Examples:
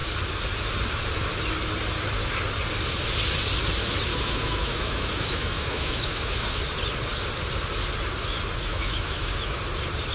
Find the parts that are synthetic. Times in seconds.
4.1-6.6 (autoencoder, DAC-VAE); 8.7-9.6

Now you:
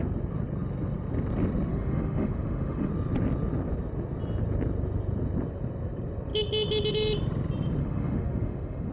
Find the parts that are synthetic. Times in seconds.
1.7-2.9 (autoencoder, DAC-VAE); 7.8-8.9

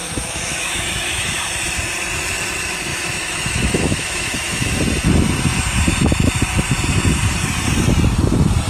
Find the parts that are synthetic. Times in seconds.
0.0-1.4 (autoencoder, DAC-VAE); 2.9-4.8

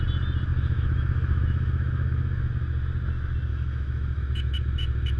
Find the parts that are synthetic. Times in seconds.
0.5-2.5 (autoencoder, DAC-VAE); 3.5-5.2

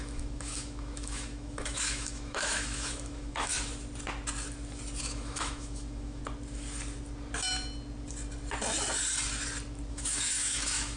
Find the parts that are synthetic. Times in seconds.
0.0-3.5 (autoencoder, DAC-VAE); 5.0-6.2; 9.9-11.0